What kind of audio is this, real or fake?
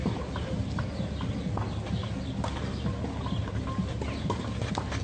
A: real